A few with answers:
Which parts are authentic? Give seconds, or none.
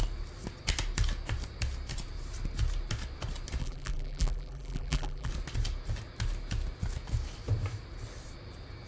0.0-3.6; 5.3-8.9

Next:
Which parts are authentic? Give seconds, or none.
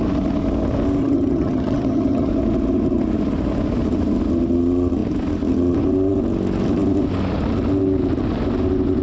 0.0-1.0; 2.3-9.0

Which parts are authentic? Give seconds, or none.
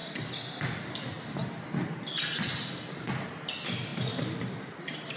0.0-5.2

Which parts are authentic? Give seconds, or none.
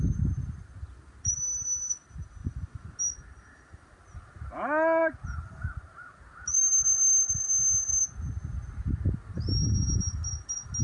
0.0-2.4; 3.0-10.8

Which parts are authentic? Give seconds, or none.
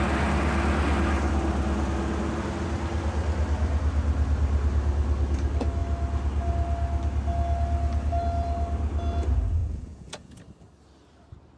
0.0-9.6; 10.4-11.6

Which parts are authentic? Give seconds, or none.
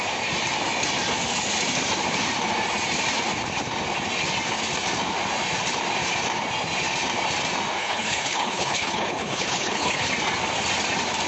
0.0-7.8; 10.1-11.3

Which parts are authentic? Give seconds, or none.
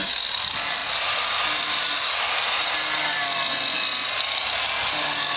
0.0-5.4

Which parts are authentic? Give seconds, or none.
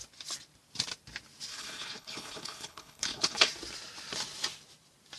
0.0-1.5; 3.5-5.2